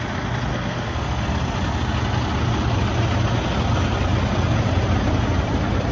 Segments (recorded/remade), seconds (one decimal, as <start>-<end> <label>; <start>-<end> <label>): 0.0-0.5 recorded; 0.5-1.2 remade; 1.2-5.9 recorded